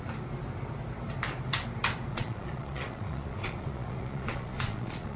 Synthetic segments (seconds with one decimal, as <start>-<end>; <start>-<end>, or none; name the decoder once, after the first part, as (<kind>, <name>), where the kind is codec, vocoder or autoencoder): 2.1-5.2 (vocoder, Vocos)